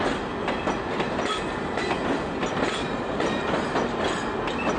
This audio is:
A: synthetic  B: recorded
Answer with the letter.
B